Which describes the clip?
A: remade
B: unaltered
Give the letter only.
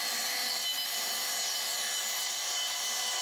B